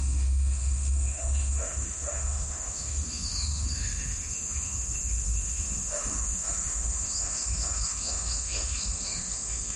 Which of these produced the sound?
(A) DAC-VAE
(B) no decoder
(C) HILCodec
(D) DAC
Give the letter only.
A